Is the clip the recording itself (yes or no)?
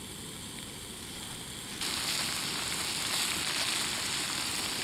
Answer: yes